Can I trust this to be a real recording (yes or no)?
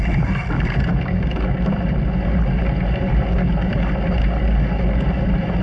yes